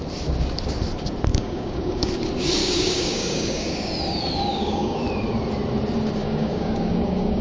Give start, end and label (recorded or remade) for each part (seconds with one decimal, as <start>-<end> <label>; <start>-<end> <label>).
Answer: 0.0-1.3 recorded; 1.3-2.1 remade; 2.1-2.6 recorded; 2.6-3.9 remade; 3.9-4.5 recorded; 4.5-5.0 remade; 5.0-6.2 recorded; 6.2-7.4 remade